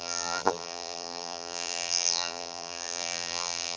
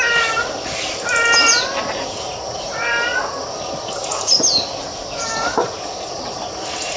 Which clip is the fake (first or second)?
first